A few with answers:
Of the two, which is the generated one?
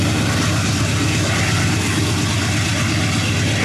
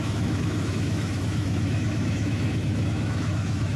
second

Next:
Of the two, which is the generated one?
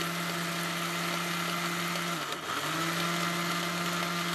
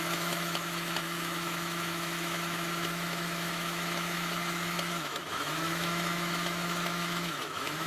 second